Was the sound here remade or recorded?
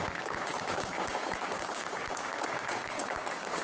remade